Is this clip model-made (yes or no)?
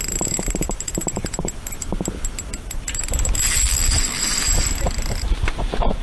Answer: yes